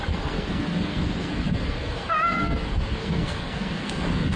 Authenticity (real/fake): fake